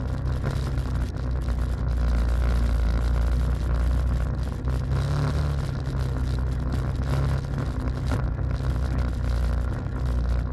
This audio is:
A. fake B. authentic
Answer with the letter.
B